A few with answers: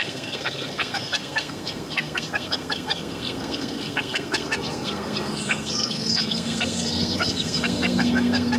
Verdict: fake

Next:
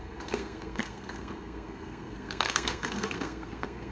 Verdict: fake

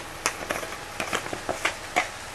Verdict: real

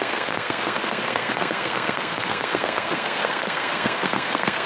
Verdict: fake